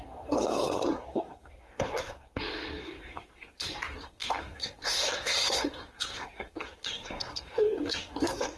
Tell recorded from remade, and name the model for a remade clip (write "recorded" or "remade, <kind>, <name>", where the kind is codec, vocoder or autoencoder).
remade, codec, SNAC